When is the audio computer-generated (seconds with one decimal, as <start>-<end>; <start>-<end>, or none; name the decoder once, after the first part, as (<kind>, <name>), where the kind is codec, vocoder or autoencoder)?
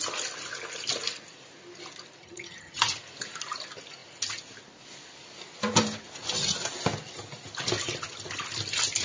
2.2-2.8 (vocoder, HiFi-GAN)